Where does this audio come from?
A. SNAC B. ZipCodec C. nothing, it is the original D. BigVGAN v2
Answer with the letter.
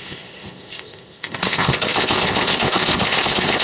B